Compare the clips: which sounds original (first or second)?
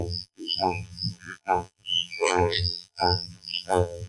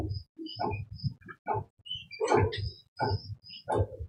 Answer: second